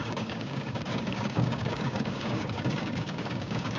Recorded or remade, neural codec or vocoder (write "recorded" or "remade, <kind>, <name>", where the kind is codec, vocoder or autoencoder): remade, codec, DAC